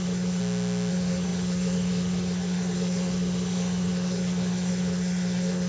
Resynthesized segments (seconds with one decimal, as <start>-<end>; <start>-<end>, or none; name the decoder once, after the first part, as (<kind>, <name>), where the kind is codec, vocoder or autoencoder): 0.0-0.4 (codec, SNAC); 0.9-5.7